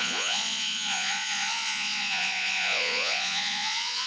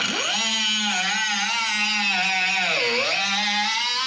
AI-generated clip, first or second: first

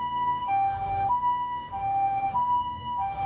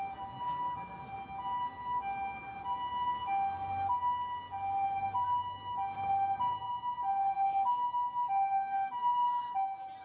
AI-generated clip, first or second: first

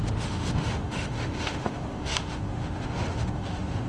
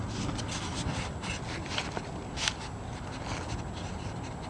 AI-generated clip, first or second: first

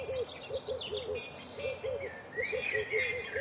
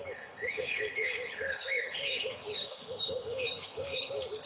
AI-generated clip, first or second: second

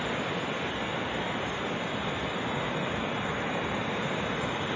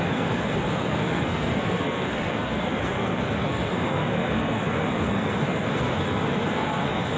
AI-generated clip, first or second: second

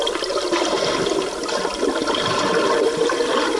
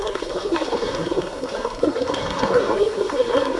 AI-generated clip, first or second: second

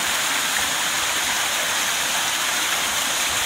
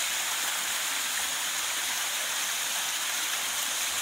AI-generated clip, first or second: first